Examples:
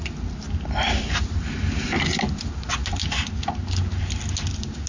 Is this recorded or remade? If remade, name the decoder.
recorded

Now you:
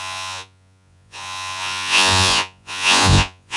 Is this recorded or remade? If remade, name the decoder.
remade, vocoder, Vocos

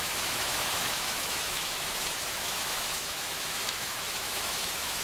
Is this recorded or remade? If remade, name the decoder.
remade, autoencoder, DAC-VAE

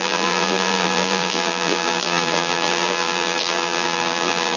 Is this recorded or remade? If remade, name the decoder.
remade, vocoder, BigVGAN v2